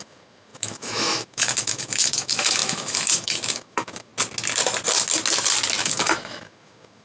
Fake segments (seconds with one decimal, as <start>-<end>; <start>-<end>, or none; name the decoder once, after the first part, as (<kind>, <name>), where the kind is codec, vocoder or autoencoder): 0.0-4.1 (autoencoder, DAC-VAE); 5.8-7.0

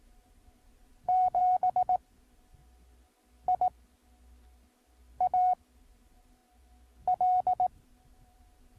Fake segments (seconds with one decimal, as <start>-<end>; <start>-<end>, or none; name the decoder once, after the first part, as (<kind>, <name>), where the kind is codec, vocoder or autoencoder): 0.0-1.4 (vocoder, BigVGAN v2); 2.0-2.6; 5.8-6.4; 7.7-8.8

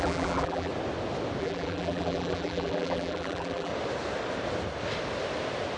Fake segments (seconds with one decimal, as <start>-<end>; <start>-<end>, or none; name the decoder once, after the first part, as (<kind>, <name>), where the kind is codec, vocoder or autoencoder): 0.0-0.7 (vocoder, BigVGAN v2); 1.4-3.7

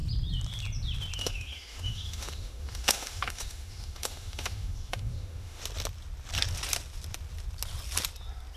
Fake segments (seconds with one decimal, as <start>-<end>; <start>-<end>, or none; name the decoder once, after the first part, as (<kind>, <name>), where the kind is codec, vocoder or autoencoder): 1.2-5.6 (autoencoder, DAC-VAE)

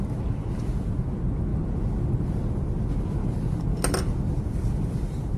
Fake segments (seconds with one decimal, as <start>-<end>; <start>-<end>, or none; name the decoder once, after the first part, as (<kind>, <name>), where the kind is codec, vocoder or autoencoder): none

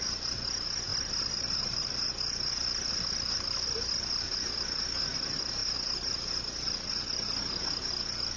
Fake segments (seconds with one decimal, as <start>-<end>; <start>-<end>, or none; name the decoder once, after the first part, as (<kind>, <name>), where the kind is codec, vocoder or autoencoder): none

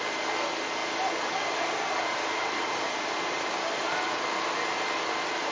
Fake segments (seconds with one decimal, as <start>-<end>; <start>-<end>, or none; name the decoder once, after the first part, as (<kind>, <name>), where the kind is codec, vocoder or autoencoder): 0.8-4.1 (vocoder, BigVGAN v2)